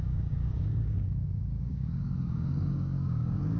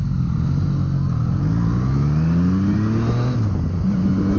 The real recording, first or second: second